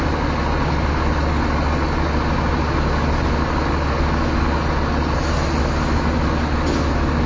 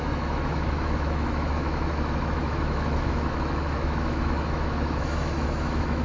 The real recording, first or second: first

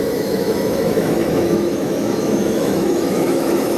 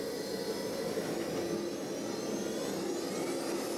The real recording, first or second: second